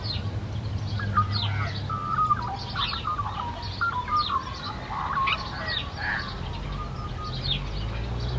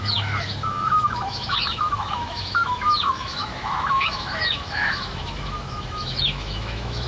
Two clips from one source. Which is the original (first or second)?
first